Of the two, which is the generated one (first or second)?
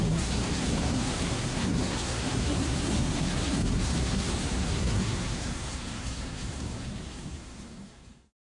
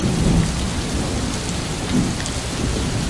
first